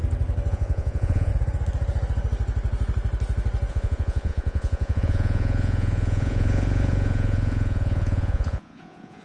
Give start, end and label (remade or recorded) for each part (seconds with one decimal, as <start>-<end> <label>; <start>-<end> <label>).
0.0-0.5 recorded; 0.5-1.3 remade; 1.3-3.7 recorded; 3.7-9.2 remade